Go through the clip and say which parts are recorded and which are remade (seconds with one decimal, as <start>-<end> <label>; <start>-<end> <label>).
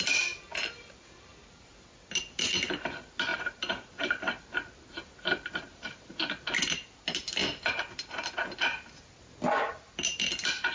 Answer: 0.0-0.5 recorded; 0.5-1.3 remade; 1.3-3.3 recorded; 3.3-4.2 remade; 4.2-5.7 recorded; 5.7-6.2 remade; 6.2-10.7 recorded